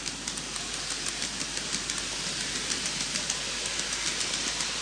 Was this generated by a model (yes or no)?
no